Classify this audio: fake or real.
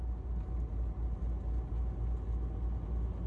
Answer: real